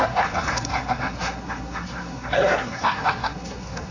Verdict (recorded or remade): remade